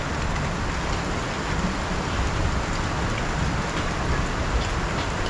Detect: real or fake real